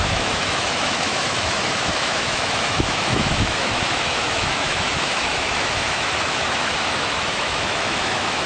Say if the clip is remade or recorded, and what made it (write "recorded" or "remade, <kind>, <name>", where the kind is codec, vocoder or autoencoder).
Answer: remade, autoencoder, DAC-VAE